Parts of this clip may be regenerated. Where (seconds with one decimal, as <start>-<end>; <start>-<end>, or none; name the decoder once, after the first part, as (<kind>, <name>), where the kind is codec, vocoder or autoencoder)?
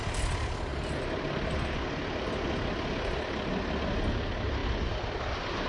none